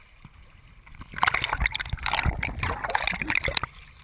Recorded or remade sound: recorded